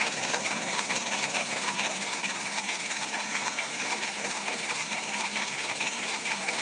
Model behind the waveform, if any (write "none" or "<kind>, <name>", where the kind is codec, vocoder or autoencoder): codec, SNAC